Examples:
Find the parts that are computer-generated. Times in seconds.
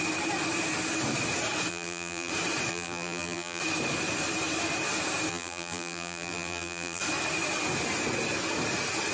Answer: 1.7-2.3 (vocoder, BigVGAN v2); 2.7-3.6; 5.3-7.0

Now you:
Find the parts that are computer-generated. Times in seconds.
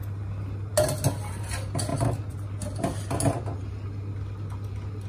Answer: none